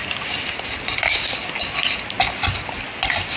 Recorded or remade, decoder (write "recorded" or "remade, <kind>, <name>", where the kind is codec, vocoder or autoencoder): recorded